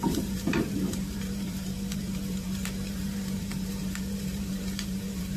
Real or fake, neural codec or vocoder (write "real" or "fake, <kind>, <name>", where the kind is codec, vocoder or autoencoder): fake, vocoder, BigVGAN v2